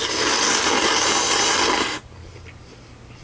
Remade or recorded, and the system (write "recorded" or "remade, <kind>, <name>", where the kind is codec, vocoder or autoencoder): recorded